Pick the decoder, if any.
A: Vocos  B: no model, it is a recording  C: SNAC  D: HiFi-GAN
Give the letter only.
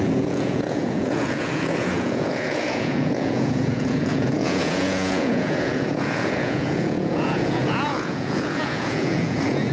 A